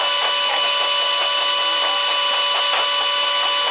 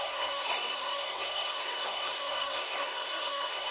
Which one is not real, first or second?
second